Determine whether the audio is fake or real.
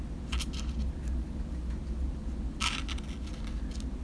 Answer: real